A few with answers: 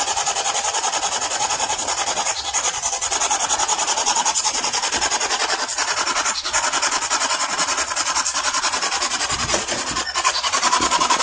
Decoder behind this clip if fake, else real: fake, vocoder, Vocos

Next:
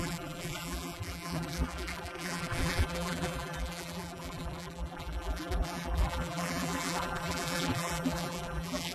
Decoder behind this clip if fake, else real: fake, vocoder, BigVGAN v2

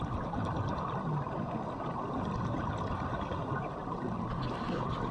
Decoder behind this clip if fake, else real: real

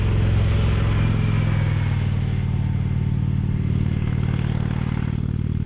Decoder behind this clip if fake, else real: real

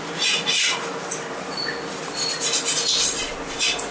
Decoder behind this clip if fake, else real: real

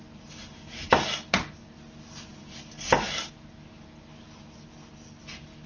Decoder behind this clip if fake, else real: real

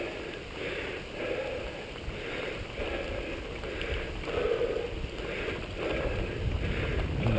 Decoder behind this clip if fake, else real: real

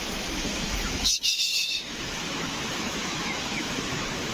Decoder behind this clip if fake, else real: fake, autoencoder, DAC-VAE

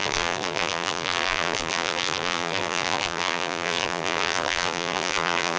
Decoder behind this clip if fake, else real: fake, vocoder, BigVGAN v2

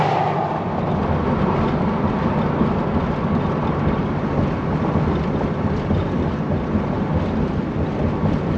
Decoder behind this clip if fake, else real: real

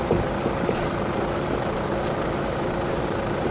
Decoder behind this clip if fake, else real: fake, vocoder, BigVGAN v2